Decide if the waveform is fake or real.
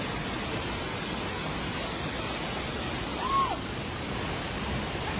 real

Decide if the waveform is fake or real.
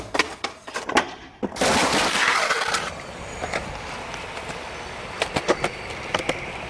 fake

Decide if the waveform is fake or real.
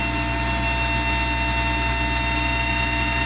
real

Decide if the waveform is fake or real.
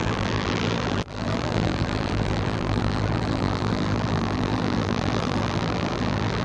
fake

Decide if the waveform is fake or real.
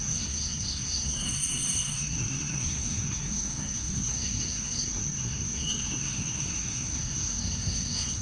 fake